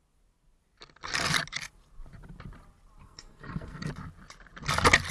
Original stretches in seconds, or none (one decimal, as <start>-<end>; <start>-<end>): 0.0-3.0; 3.9-5.1